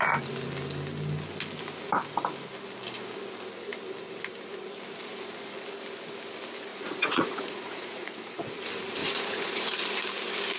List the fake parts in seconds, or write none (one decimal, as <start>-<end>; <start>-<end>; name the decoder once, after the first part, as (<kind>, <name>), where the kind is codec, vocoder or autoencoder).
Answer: 6.7-8.3 (vocoder, Vocos); 9.0-9.7